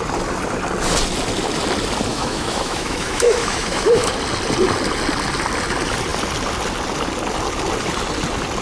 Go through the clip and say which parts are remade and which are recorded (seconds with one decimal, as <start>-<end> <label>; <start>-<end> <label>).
0.0-2.1 recorded; 2.1-4.1 remade; 4.1-8.6 recorded